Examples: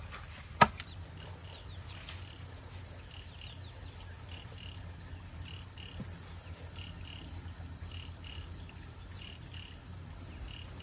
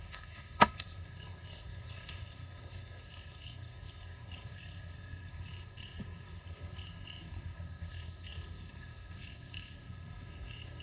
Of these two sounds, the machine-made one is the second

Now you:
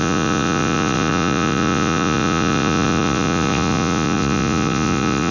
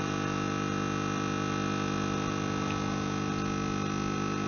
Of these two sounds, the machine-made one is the first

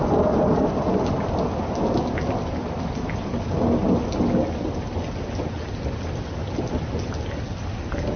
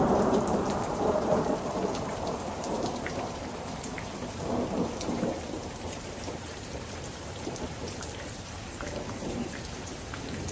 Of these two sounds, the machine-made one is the second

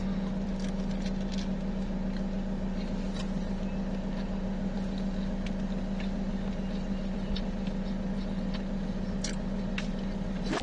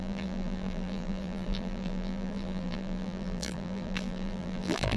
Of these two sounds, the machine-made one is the second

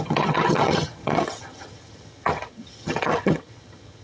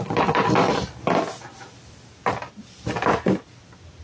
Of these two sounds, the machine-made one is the first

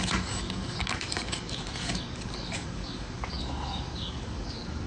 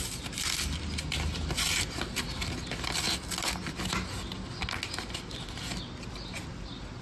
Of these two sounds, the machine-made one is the first